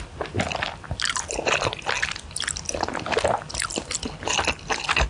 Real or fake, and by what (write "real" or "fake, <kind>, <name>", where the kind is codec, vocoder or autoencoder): real